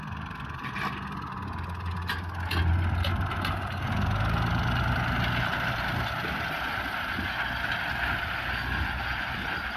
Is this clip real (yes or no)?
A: yes